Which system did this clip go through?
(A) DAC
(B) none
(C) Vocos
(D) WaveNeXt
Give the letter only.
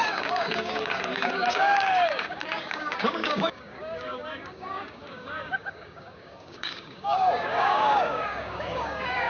A